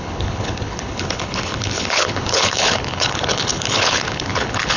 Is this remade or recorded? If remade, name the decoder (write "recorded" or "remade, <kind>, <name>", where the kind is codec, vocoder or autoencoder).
remade, codec, HILCodec